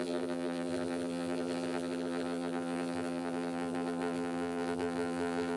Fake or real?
fake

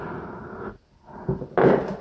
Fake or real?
real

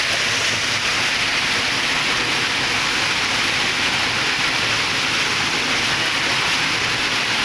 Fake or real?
real